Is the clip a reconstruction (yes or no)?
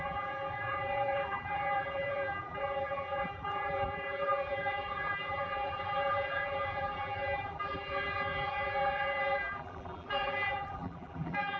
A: yes